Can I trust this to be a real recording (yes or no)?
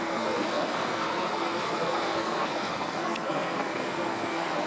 no